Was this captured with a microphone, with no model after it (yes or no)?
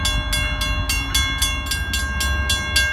yes